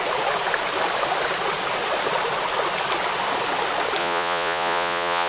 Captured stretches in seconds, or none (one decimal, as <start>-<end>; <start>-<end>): 0.0-4.0

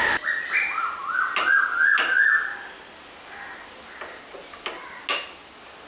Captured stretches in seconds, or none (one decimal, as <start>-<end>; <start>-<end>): 0.0-5.9

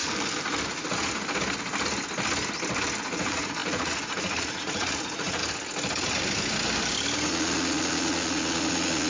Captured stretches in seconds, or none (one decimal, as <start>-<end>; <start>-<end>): 0.0-3.0; 5.4-7.3